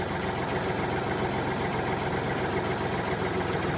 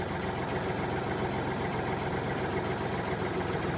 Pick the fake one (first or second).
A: second